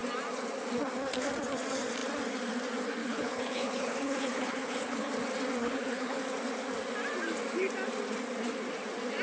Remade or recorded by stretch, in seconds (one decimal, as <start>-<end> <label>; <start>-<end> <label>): 0.0-3.0 recorded; 3.0-5.1 remade; 5.1-5.6 recorded; 5.6-6.2 remade; 6.2-9.2 recorded